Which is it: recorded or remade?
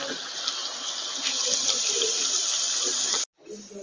recorded